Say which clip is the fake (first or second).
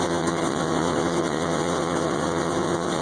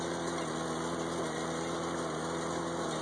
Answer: first